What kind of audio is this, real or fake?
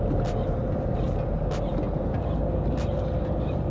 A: real